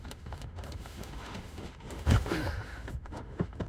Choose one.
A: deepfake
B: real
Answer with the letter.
A